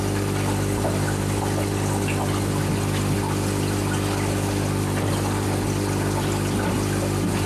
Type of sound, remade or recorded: recorded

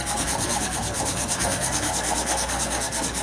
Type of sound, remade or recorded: remade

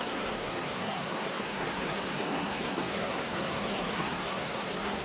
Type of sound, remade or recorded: remade